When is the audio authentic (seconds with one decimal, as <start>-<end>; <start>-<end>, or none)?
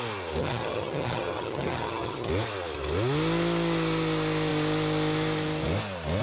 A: 0.0-0.4; 2.3-6.2